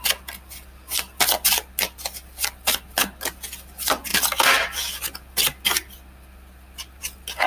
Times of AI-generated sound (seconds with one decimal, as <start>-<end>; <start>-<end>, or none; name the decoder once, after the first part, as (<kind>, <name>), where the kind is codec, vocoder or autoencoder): none